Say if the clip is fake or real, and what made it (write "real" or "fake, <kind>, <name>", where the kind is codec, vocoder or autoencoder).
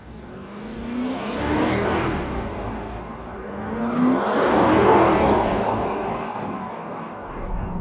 fake, codec, DAC